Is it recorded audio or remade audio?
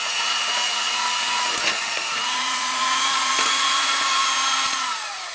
remade